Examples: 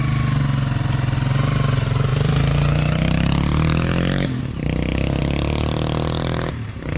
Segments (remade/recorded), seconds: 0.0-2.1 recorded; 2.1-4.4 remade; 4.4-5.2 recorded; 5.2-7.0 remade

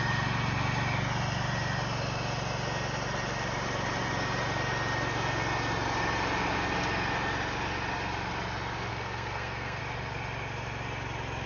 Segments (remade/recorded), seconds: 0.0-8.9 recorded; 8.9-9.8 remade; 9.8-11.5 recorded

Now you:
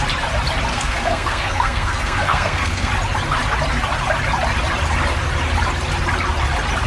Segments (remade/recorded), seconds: 0.0-0.7 recorded; 0.7-2.9 remade; 2.9-6.9 recorded